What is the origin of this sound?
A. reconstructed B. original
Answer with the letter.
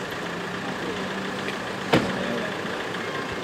B